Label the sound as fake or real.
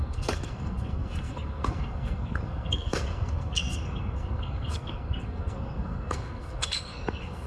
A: fake